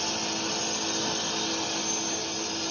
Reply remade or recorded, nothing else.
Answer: recorded